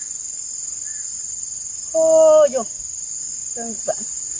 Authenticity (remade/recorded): recorded